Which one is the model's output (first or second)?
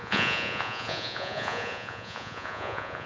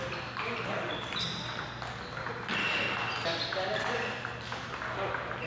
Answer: first